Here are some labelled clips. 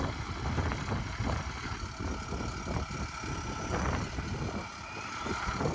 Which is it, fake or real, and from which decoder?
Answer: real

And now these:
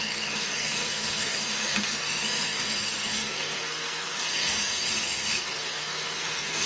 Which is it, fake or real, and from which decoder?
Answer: fake, codec, SNAC